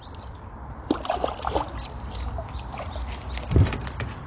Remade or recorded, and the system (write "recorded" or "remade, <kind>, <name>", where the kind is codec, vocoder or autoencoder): recorded